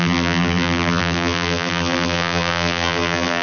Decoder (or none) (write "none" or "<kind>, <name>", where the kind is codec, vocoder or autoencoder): vocoder, BigVGAN v2